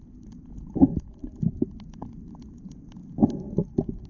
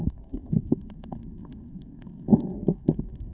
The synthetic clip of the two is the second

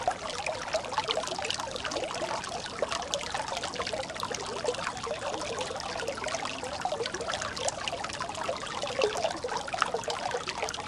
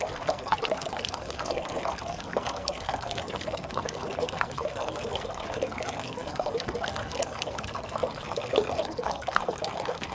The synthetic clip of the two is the second